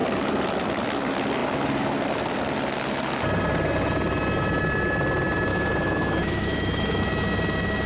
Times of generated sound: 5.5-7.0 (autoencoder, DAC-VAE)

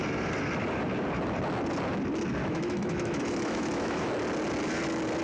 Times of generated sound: 2.4-4.1 (autoencoder, DAC-VAE)

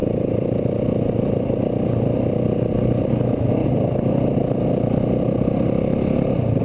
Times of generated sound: 3.1-3.6 (autoencoder, DAC-VAE)

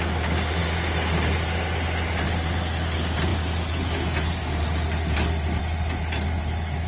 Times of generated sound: none

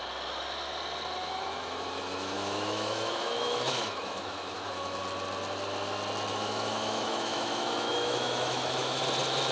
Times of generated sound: 1.2-5.0 (autoencoder, DAC-VAE); 6.3-9.0